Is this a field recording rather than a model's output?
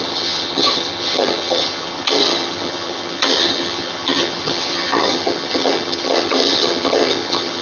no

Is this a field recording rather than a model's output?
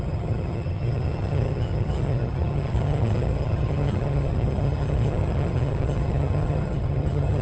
no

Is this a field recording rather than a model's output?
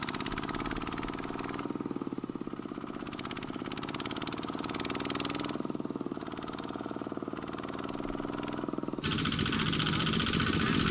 yes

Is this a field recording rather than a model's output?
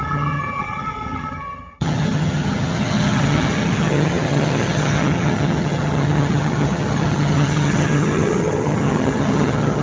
no